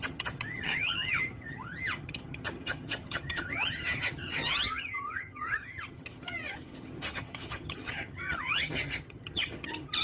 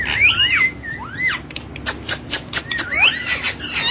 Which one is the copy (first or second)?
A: first